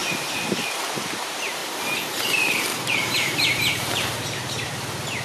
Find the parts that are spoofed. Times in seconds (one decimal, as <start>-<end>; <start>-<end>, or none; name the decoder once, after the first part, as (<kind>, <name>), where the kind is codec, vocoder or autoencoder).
1.2-1.6 (vocoder, BigVGAN v2); 2.2-5.2